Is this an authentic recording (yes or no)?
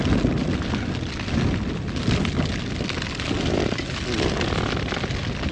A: yes